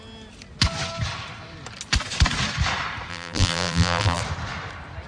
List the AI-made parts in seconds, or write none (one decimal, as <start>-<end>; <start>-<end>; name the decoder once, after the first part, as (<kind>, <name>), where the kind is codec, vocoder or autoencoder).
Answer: 3.1-4.2 (vocoder, BigVGAN v2)